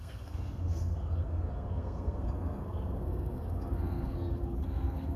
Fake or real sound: fake